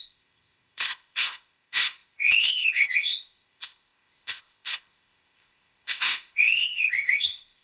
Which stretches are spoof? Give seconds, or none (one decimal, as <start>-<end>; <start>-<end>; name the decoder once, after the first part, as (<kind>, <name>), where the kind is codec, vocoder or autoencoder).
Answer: 0.0-7.6 (codec, ZipCodec)